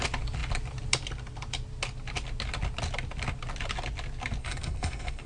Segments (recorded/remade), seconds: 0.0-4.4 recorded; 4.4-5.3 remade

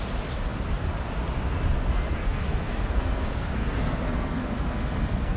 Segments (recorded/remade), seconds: 0.0-2.2 recorded; 2.2-5.4 remade

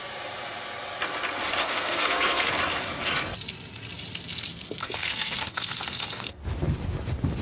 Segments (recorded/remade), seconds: 0.0-1.6 recorded; 1.6-2.5 remade; 2.5-4.8 recorded; 4.8-6.4 remade; 6.4-7.4 recorded